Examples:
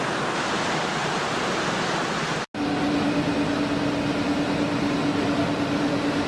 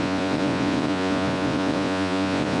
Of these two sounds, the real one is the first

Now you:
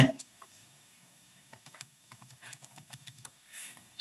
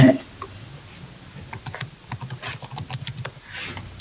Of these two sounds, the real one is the second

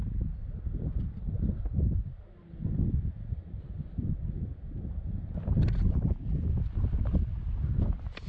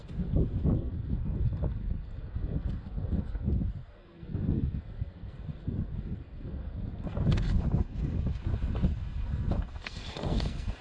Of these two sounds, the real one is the first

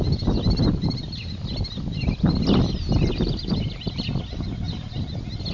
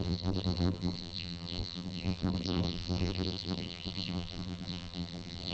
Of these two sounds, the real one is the first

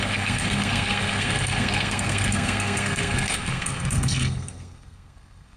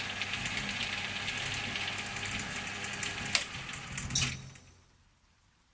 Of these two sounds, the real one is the second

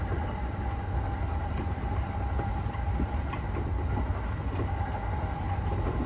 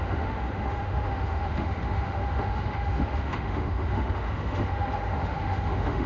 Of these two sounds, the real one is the first